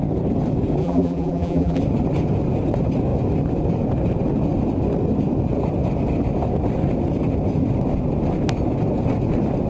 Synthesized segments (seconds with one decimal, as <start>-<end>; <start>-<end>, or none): 0.8-1.8